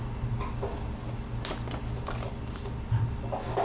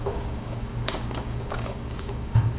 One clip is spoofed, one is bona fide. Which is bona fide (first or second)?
first